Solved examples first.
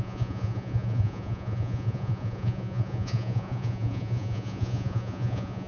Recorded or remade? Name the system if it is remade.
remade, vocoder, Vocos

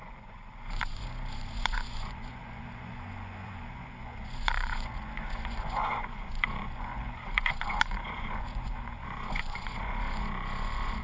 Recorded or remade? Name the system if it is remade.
remade, vocoder, Vocos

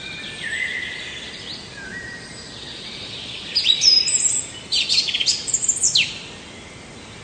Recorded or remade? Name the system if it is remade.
recorded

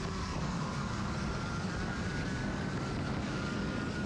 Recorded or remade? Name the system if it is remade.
remade, codec, DAC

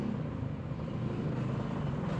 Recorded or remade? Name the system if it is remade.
recorded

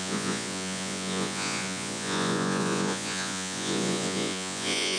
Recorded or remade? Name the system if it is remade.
remade, vocoder, Vocos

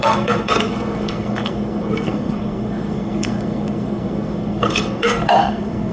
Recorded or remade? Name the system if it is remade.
remade, codec, SNAC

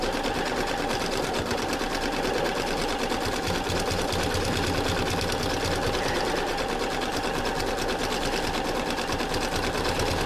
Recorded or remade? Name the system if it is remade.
recorded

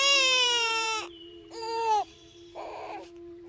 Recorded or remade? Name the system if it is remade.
remade, vocoder, BigVGAN v2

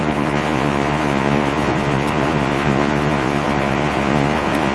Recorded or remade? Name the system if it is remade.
remade, vocoder, Vocos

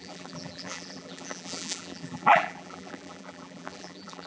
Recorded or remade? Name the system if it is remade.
remade, vocoder, BigVGAN v2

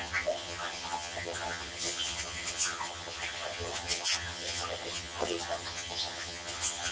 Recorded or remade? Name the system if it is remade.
remade, vocoder, HiFi-GAN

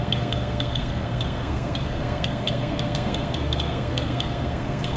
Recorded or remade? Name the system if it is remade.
remade, codec, SNAC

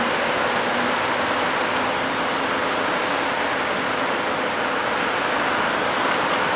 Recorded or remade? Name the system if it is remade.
recorded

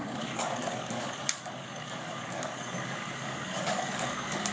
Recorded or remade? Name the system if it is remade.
remade, codec, DAC